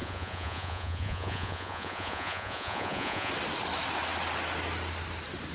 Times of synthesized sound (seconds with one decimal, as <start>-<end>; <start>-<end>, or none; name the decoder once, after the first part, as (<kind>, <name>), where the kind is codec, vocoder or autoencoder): 0.0-3.3 (vocoder, Vocos)